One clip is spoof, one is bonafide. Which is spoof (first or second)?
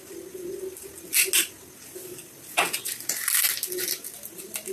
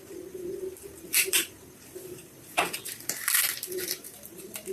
second